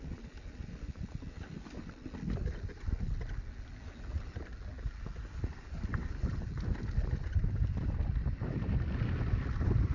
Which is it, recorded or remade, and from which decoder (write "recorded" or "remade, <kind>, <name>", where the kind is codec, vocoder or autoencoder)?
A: recorded